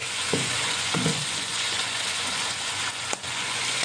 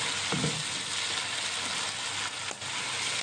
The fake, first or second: first